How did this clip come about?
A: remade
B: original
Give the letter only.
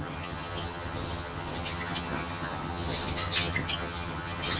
A